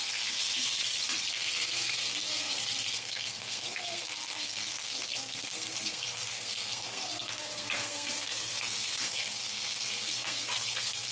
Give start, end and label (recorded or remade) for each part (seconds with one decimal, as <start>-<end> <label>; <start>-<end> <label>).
0.0-0.8 remade; 0.8-1.3 recorded; 1.3-11.1 remade